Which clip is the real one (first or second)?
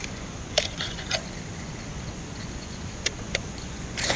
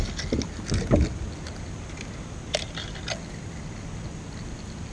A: second